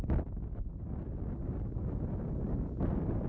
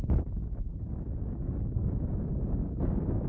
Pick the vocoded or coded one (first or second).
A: second